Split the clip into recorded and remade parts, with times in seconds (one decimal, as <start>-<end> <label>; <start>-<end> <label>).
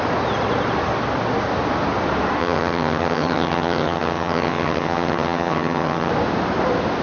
0.0-2.4 recorded; 2.4-6.1 remade; 6.1-7.0 recorded